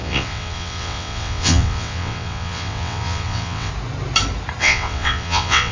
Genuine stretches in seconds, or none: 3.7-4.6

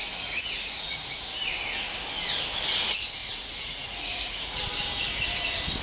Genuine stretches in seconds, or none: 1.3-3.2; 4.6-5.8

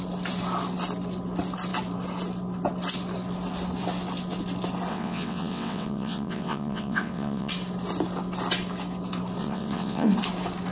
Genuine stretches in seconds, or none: 0.0-4.9; 7.5-9.4; 10.1-10.7

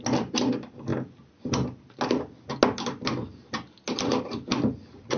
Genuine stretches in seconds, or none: 0.0-5.2